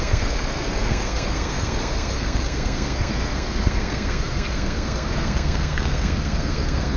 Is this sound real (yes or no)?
no